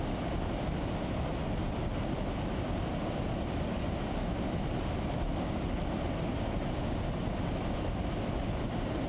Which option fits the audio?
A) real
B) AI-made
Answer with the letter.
A